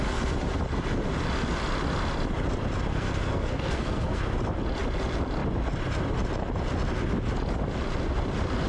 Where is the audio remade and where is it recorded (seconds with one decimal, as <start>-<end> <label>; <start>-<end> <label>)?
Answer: 0.0-2.9 recorded; 2.9-4.2 remade; 4.2-8.7 recorded